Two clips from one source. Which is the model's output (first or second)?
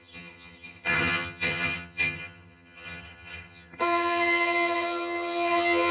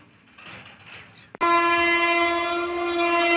first